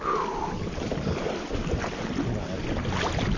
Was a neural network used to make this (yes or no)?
no